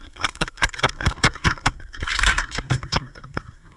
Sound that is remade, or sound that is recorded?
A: remade